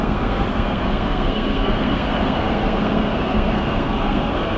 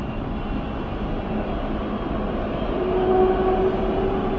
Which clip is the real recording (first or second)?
second